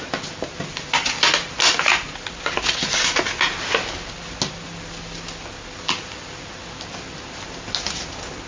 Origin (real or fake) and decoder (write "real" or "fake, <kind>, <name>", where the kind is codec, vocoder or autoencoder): real